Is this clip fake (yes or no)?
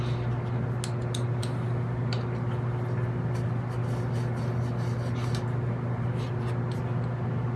no